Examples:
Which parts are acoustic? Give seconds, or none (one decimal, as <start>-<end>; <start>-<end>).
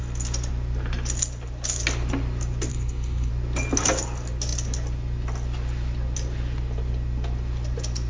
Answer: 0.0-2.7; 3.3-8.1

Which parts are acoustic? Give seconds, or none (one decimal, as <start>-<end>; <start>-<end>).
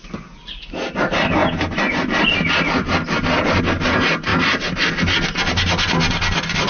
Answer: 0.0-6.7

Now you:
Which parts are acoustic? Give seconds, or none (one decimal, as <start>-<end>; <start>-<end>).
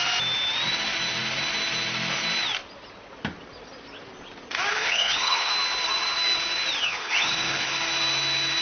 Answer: 0.0-4.7; 5.5-6.8; 7.7-8.6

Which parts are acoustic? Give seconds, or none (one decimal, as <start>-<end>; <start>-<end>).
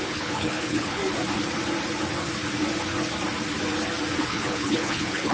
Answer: 1.0-4.2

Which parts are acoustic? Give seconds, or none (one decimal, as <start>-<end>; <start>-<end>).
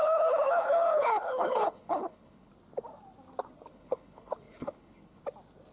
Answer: 2.5-3.7; 5.2-5.7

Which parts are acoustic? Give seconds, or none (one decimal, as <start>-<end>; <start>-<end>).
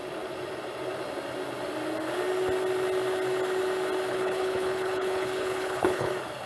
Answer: 0.0-4.1; 6.1-6.5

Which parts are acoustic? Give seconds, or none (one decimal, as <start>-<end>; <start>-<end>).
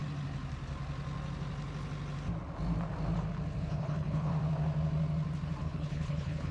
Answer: 0.0-3.6; 4.3-5.6